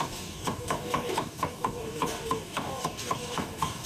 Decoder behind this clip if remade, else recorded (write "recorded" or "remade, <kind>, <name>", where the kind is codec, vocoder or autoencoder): remade, codec, DAC